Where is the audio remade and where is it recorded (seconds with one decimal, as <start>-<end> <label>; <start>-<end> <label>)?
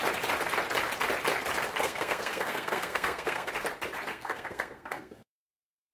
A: 0.0-1.8 recorded; 1.8-3.5 remade; 3.5-4.1 recorded; 4.1-5.9 remade